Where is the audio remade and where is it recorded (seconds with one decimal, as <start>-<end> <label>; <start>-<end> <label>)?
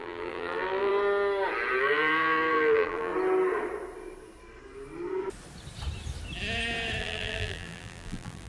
0.0-0.9 remade; 0.9-1.8 recorded; 1.8-3.1 remade; 3.1-7.0 recorded; 7.0-8.5 remade